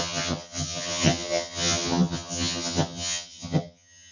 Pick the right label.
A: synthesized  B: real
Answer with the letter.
A